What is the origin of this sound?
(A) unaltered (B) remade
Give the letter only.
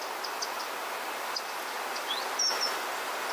A